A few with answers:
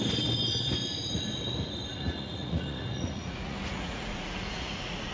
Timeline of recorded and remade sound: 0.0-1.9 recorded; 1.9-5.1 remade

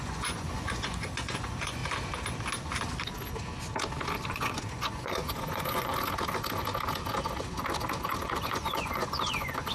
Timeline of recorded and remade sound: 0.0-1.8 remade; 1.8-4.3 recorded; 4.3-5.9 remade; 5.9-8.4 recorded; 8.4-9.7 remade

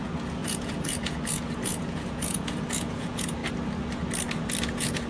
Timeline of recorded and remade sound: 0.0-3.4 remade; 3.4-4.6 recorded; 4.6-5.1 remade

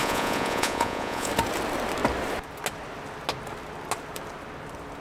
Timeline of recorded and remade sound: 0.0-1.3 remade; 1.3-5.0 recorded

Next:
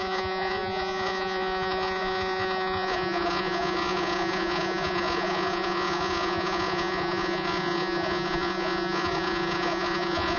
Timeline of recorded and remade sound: 0.0-10.4 remade

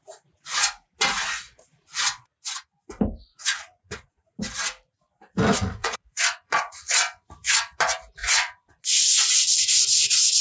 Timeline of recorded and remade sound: 0.0-3.3 recorded; 3.3-4.4 remade; 4.4-5.8 recorded; 5.8-6.8 remade; 6.8-8.2 recorded; 8.2-8.8 remade; 8.8-10.4 recorded

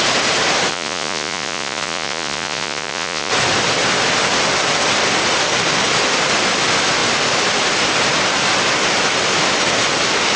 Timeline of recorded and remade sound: 0.0-0.7 recorded; 0.7-3.3 remade; 3.3-10.4 recorded

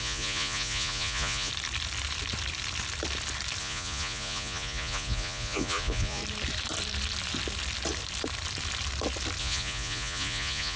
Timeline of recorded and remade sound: 0.0-1.5 remade; 1.5-3.6 recorded; 3.6-6.2 remade; 6.2-9.4 recorded; 9.4-10.8 remade